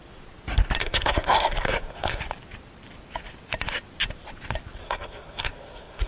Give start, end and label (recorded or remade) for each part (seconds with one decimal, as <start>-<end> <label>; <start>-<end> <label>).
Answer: 0.0-0.8 recorded; 0.8-2.2 remade; 2.2-4.8 recorded; 4.8-6.1 remade